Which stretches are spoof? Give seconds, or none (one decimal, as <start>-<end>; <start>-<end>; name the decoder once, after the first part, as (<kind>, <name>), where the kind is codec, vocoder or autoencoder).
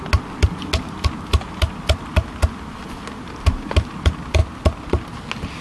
none